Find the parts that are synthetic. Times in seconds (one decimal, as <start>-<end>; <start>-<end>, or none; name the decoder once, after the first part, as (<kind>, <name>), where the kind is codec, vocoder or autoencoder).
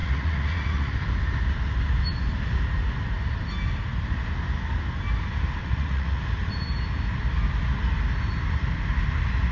0.0-0.9 (vocoder, Vocos); 5.6-6.2